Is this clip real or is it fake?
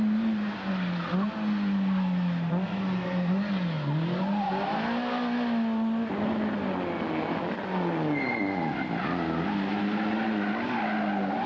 real